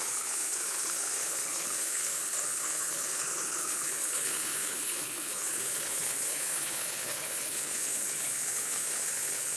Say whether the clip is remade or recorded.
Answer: remade